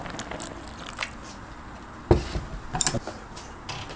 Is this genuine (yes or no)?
yes